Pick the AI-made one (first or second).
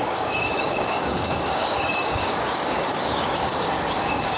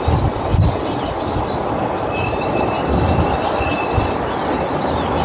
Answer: first